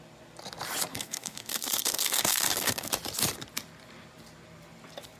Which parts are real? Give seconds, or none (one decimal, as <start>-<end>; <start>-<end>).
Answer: 0.0-0.9; 2.9-5.2